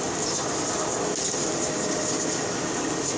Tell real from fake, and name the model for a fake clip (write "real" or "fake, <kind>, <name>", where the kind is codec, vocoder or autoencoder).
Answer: real